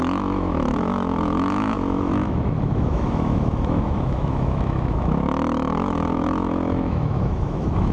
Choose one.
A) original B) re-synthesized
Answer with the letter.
B